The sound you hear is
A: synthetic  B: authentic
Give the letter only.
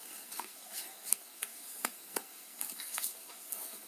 A